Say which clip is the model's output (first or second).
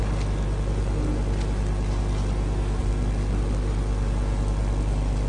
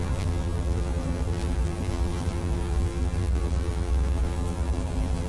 second